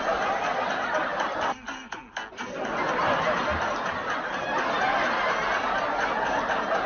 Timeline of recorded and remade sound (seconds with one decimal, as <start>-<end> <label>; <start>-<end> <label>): 0.0-6.9 recorded